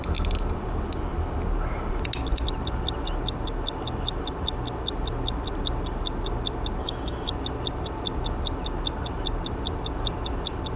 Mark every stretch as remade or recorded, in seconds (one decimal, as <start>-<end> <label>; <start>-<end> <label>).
0.0-6.8 recorded; 6.8-7.3 remade; 7.3-10.8 recorded